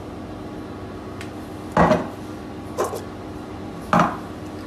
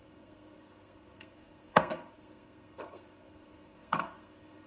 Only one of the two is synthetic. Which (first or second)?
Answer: second